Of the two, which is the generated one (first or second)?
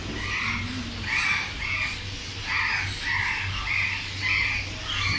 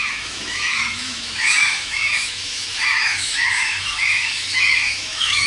second